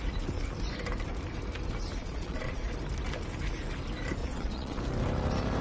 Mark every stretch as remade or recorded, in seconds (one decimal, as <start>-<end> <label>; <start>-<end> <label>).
0.0-2.0 recorded; 2.0-2.7 remade; 2.7-4.2 recorded; 4.2-4.8 remade; 4.8-5.6 recorded